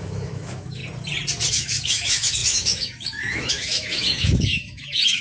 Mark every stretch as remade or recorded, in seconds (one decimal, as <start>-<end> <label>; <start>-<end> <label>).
0.0-0.8 remade; 0.8-1.5 recorded; 1.5-5.2 remade